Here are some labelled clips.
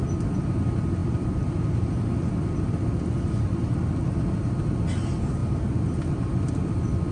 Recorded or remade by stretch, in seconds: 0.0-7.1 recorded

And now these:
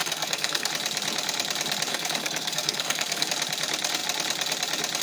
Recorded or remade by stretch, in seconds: 0.0-0.7 remade; 0.7-1.9 recorded; 1.9-3.3 remade; 3.3-5.0 recorded

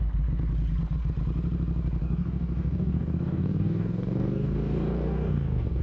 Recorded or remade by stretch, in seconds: 0.0-2.0 recorded; 2.0-5.8 remade

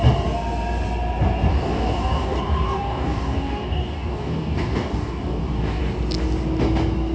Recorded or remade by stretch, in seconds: 0.0-1.5 recorded; 1.5-5.8 remade; 5.8-7.1 recorded

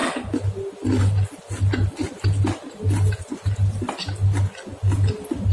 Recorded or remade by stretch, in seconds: 0.0-5.5 recorded

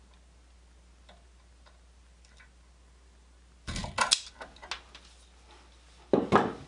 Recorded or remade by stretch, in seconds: 0.0-6.7 recorded

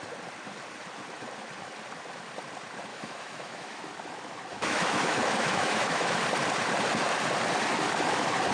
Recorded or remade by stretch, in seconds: 0.0-2.9 recorded; 2.9-3.8 remade; 3.8-4.5 recorded; 4.5-6.1 remade; 6.1-8.5 recorded

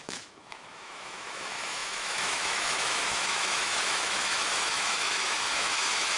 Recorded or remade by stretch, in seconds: 0.0-6.2 remade